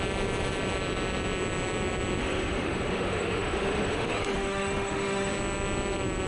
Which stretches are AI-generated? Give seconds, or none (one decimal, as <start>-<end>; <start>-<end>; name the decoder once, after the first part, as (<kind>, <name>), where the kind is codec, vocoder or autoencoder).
2.2-5.3 (autoencoder, DAC-VAE)